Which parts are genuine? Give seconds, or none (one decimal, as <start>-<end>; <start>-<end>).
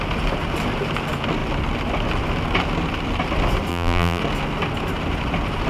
0.0-3.7; 4.2-5.7